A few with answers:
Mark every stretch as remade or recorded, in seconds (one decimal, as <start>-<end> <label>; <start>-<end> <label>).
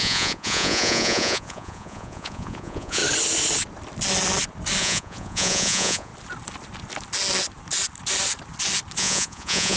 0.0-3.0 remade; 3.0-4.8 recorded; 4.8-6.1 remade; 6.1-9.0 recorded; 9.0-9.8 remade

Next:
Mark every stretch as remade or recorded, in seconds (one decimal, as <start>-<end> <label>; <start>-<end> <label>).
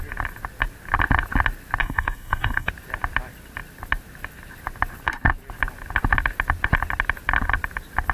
0.0-1.8 recorded; 1.8-2.7 remade; 2.7-8.1 recorded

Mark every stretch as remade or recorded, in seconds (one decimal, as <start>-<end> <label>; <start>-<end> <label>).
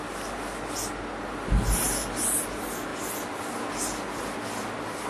0.0-5.1 recorded